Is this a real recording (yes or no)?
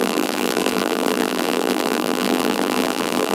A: no